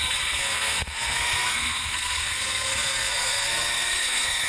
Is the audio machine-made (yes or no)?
yes